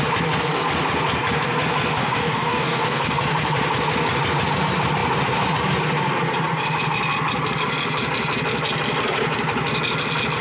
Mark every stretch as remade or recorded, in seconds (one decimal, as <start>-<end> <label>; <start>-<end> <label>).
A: 0.0-2.0 recorded; 2.0-3.2 remade; 3.2-10.4 recorded